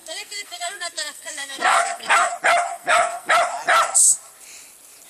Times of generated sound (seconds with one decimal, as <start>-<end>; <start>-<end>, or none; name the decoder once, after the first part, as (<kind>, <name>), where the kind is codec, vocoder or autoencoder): 0.0-2.3 (codec, SNAC); 2.7-3.3